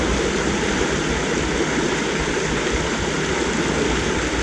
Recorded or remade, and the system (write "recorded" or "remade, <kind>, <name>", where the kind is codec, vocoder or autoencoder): recorded